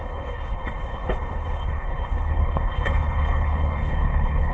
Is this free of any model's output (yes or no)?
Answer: no